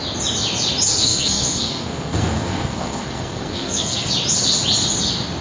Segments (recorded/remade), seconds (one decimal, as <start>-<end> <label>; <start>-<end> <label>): 0.0-0.9 recorded; 0.9-4.1 remade; 4.1-5.4 recorded

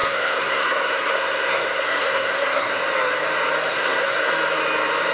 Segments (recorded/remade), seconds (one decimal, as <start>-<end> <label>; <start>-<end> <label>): 0.0-2.8 remade; 2.8-3.7 recorded; 3.7-4.3 remade; 4.3-5.1 recorded

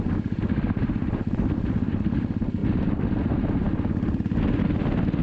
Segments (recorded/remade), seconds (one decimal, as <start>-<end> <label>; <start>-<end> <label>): 0.0-5.2 recorded

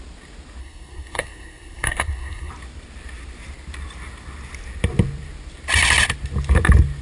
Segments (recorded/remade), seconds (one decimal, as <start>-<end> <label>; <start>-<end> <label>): 0.0-0.6 recorded; 0.6-2.5 remade; 2.5-7.0 recorded

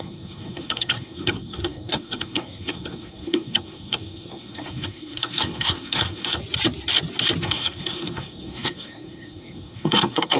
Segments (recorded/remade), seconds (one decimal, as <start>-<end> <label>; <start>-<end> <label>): 0.0-6.4 remade; 6.4-7.4 recorded; 7.4-10.4 remade

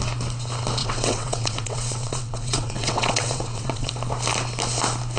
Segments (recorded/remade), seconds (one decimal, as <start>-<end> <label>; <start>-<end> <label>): 0.0-0.8 recorded; 0.8-3.9 remade; 3.9-5.2 recorded